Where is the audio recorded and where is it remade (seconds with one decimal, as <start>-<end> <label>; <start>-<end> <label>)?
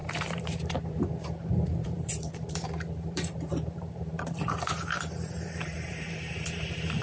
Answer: 0.0-7.0 remade